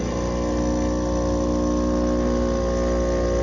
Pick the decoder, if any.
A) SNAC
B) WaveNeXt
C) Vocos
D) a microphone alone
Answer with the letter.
D